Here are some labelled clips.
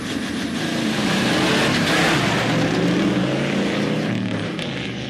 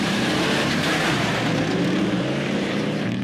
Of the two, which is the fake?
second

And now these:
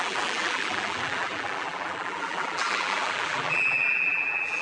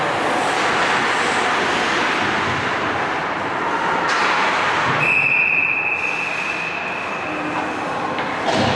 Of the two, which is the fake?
first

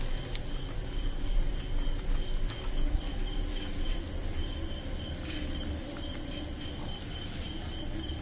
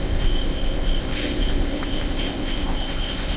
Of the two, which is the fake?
second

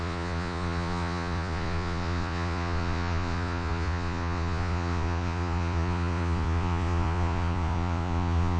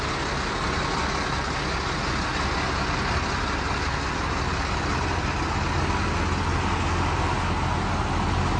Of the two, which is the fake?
first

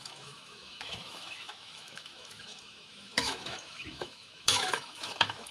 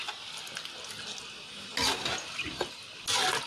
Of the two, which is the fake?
first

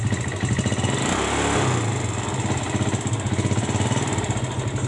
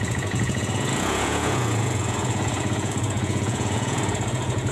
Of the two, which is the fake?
second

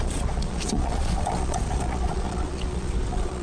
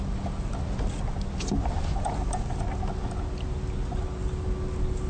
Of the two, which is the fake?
first